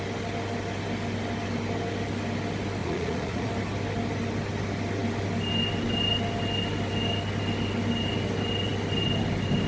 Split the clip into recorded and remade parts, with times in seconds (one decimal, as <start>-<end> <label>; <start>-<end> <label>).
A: 0.0-2.8 recorded; 2.8-3.5 remade; 3.5-9.7 recorded